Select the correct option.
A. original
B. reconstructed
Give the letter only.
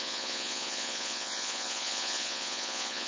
B